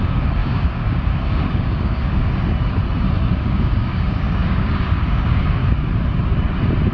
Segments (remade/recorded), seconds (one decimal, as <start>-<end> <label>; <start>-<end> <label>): 0.0-2.2 remade; 2.2-3.4 recorded; 3.4-5.6 remade; 5.6-6.9 recorded